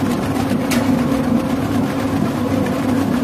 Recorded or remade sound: recorded